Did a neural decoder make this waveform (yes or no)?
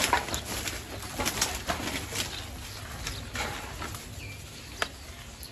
no